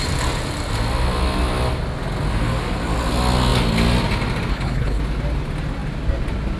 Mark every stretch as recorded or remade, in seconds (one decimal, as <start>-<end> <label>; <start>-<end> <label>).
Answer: 0.0-4.5 recorded; 4.5-5.0 remade; 5.0-6.6 recorded